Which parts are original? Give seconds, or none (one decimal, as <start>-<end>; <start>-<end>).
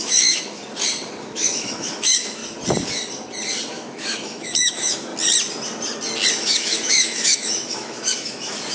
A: 0.6-1.2; 2.4-3.7; 5.1-6.3